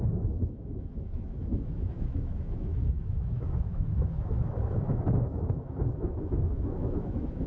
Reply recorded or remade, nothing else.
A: remade